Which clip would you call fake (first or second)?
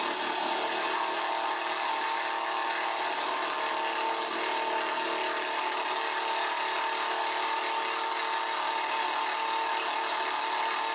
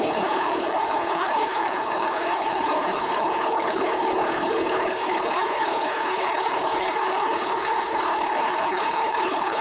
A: second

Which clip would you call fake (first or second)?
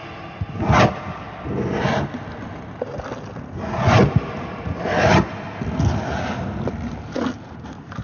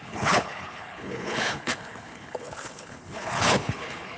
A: second